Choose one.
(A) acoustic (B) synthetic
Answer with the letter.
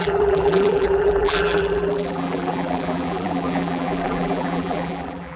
B